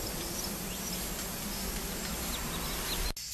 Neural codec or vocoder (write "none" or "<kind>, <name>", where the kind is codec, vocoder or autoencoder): none